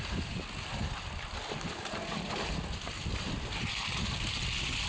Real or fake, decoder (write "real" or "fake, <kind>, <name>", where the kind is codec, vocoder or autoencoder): real